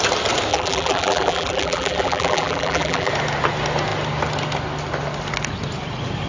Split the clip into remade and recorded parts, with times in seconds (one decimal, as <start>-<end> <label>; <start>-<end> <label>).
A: 0.0-0.5 recorded; 0.5-3.1 remade; 3.1-6.3 recorded